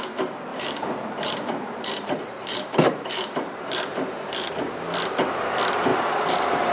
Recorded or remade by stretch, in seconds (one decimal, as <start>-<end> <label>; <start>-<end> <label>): 0.0-0.5 recorded; 0.5-4.5 remade; 4.5-5.9 recorded; 5.9-6.7 remade